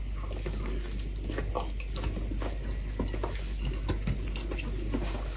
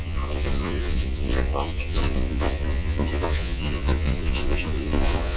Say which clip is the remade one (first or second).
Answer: second